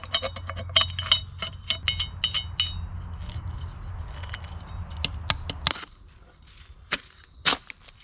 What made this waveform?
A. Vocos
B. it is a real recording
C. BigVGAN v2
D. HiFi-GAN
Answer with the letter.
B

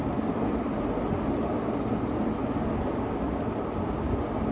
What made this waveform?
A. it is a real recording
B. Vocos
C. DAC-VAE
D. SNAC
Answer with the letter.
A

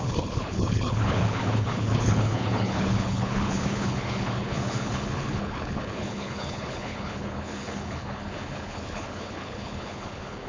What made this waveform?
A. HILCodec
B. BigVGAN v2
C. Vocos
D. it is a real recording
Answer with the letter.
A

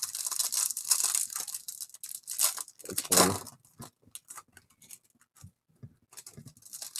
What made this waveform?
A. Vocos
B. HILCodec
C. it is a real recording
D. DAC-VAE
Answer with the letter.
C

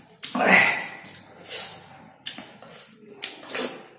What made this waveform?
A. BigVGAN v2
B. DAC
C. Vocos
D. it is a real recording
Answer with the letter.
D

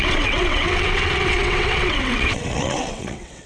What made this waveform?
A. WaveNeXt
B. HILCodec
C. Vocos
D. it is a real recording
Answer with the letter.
A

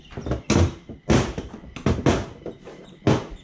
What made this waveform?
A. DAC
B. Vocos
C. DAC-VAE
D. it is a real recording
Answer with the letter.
D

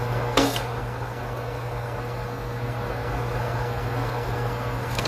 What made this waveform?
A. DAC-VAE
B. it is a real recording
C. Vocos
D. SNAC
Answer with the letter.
D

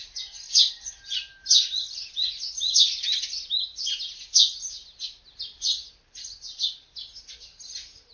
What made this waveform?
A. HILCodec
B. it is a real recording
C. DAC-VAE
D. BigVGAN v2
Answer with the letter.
B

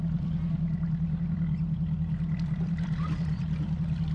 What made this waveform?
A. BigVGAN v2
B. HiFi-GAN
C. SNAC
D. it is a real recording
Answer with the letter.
A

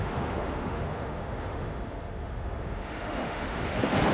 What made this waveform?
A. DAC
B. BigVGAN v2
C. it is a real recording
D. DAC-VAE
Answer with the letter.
D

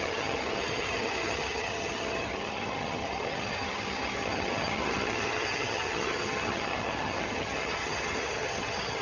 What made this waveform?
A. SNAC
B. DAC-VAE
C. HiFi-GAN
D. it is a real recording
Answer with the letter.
C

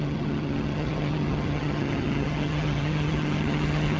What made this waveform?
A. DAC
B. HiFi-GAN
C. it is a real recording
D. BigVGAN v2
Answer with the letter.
B